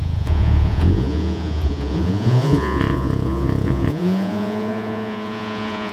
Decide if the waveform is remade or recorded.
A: remade